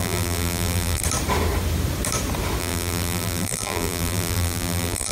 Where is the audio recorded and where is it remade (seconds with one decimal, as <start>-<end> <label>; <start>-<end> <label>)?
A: 0.0-1.0 remade; 1.0-2.6 recorded; 2.6-5.1 remade